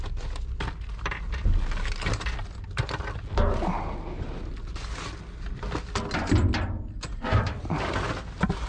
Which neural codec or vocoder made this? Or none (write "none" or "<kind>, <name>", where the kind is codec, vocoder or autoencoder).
none